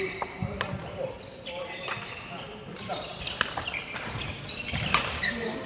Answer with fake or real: fake